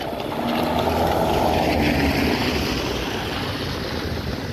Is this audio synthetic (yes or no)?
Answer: no